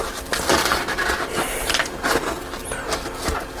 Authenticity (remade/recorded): recorded